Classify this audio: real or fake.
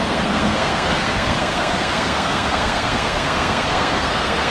fake